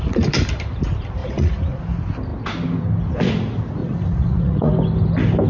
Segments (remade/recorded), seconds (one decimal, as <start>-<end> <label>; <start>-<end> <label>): 0.0-1.2 recorded; 1.2-1.8 remade; 1.8-3.8 recorded; 3.8-4.7 remade; 4.7-5.5 recorded